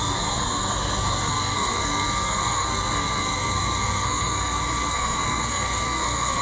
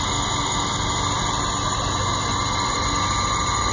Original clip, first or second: second